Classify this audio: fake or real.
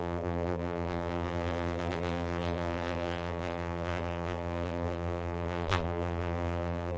fake